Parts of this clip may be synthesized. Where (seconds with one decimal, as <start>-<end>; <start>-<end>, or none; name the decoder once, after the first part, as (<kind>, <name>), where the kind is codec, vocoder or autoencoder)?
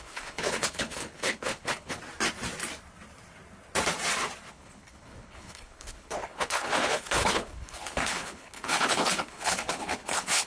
0.0-2.0 (codec, HILCodec); 4.5-10.5